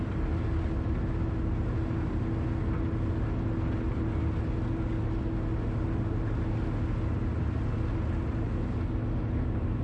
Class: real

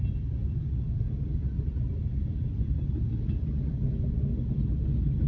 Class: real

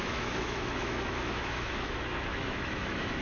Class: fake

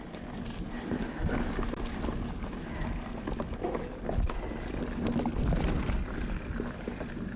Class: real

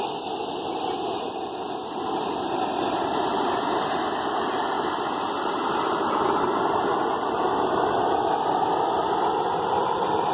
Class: real